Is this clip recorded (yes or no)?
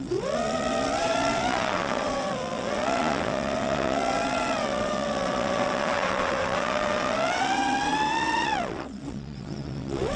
no